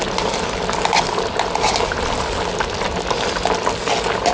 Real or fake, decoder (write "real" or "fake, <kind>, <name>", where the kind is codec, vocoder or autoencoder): real